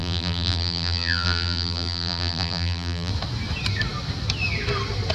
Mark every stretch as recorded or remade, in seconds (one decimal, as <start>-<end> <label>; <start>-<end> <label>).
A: 0.0-3.1 remade; 3.1-5.1 recorded